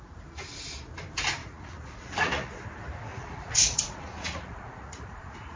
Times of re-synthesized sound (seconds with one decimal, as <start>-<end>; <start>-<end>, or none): 1.4-2.5; 3.1-5.6